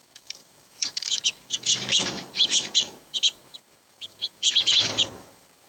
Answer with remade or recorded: remade